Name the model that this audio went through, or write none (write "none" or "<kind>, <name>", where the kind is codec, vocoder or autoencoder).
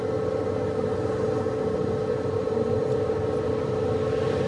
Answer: none